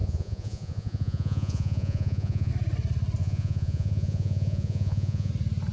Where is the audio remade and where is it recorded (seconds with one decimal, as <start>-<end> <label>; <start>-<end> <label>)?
0.0-2.5 remade; 2.5-3.2 recorded; 3.2-5.3 remade; 5.3-5.7 recorded